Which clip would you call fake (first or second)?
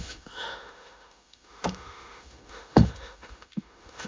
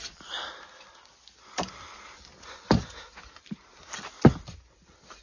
first